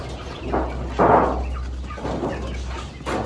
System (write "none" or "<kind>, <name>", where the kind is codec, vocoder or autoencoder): none